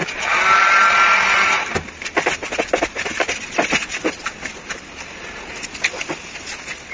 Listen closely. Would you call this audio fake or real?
real